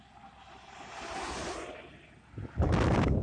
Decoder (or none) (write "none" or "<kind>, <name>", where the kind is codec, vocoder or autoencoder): none